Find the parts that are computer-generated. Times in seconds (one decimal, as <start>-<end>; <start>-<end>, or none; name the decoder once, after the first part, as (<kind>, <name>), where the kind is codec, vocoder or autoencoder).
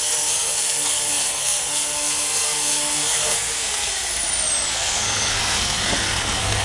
0.0-3.9 (codec, SNAC); 4.7-6.6